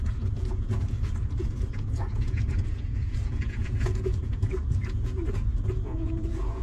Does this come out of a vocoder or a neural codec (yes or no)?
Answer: yes